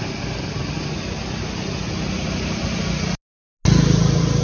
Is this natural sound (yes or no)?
yes